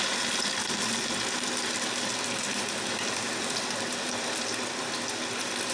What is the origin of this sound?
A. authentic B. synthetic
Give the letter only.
B